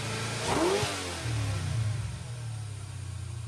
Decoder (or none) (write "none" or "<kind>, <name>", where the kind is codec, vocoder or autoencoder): none